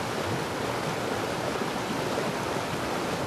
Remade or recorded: recorded